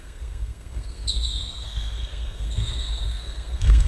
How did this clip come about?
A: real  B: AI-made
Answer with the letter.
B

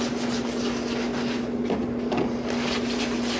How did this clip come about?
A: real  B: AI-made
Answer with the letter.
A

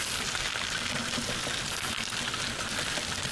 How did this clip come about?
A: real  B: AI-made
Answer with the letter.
A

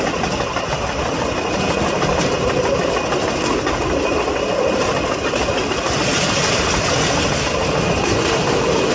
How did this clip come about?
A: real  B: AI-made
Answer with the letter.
A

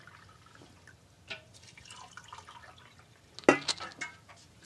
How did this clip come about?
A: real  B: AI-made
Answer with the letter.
A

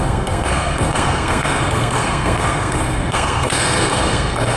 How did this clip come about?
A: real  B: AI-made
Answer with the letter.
B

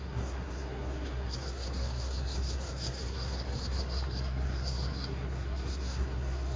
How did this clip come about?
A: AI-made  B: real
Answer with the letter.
A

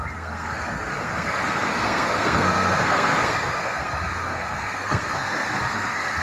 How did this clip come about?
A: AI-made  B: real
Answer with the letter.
A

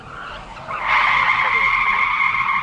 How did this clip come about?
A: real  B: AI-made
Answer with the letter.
A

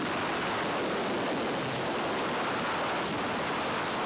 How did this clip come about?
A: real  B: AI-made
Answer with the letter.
A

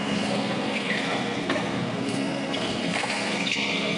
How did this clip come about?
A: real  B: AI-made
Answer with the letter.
B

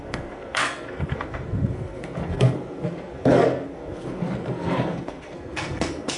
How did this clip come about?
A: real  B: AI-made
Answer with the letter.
B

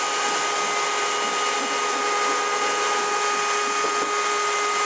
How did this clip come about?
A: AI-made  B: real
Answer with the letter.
B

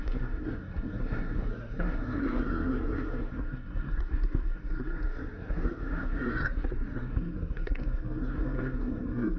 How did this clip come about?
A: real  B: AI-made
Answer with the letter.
B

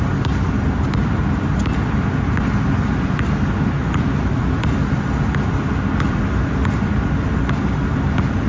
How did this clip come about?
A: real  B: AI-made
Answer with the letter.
A